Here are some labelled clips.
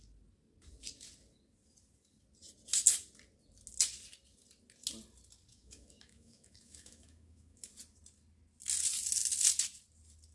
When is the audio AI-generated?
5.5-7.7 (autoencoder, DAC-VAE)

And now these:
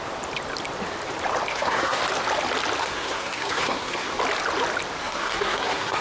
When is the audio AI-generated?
1.5-2.0 (codec, SNAC); 2.8-4.2; 5.0-6.0

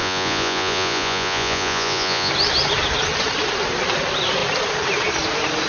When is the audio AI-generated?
0.0-2.3 (vocoder, Vocos)

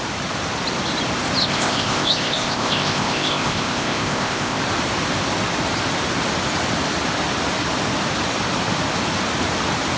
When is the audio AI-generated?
1.4-4.6 (codec, ZipCodec)

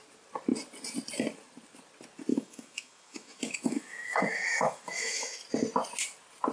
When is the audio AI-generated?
2.3-5.4 (autoencoder, DAC-VAE)

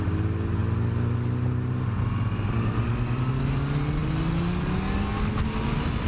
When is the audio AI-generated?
none

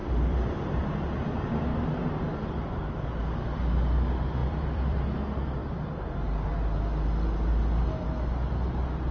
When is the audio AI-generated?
0.0-0.8 (vocoder, BigVGAN v2); 4.4-5.0

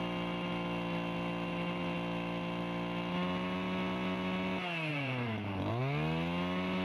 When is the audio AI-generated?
4.9-5.8 (vocoder, BigVGAN v2)